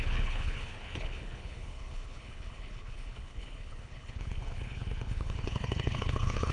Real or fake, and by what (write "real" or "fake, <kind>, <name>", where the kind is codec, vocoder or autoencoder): fake, codec, HILCodec